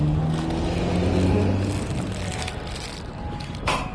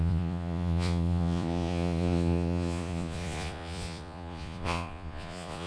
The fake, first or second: second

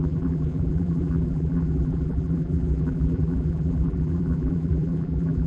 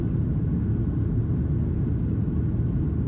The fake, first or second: first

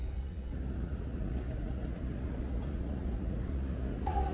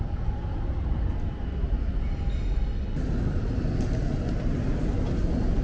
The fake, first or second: first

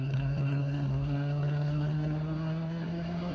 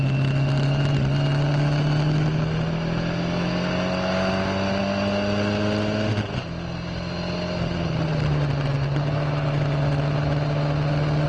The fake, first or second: first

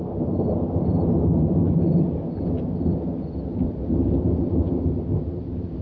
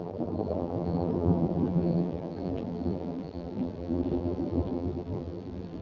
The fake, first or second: second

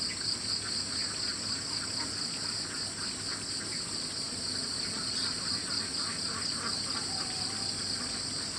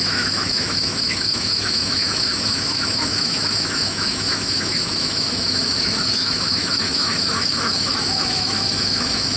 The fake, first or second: second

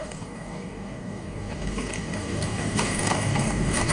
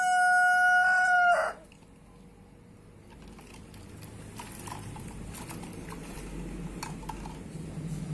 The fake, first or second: first